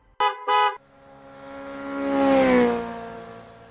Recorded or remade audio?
recorded